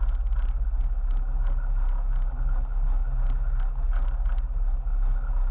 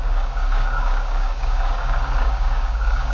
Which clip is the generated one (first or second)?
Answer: second